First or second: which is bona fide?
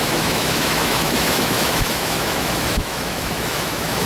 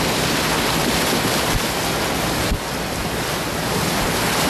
second